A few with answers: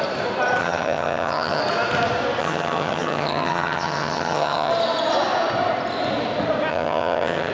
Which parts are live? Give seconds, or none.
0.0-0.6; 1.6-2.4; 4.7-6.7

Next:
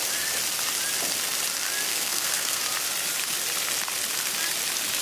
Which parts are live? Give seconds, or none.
0.0-1.9; 2.6-5.0

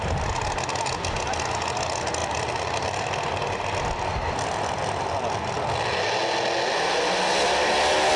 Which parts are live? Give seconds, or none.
0.0-8.2

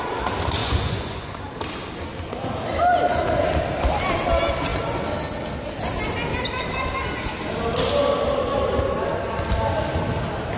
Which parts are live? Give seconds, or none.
0.0-0.6; 1.4-10.6

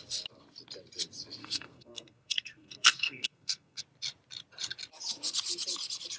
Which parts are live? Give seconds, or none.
0.0-1.4; 3.8-6.2

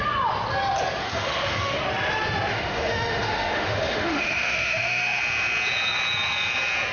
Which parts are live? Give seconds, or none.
0.0-1.0; 1.8-2.5; 5.2-6.9